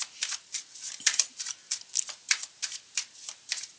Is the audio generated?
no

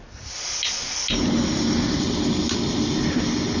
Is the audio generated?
no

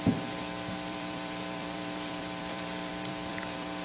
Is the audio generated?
yes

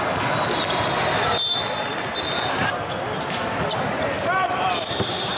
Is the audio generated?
no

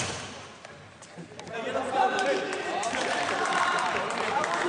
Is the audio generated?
yes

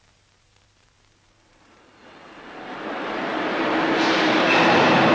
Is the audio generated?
yes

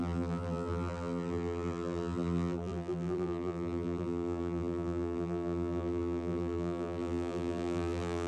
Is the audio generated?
yes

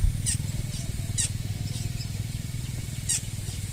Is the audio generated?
no